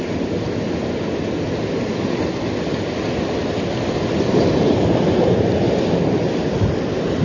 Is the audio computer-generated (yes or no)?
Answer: no